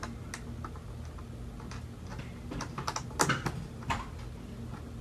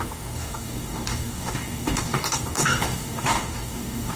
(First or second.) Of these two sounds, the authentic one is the first